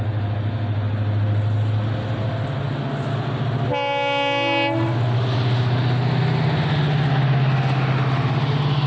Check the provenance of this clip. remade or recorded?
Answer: recorded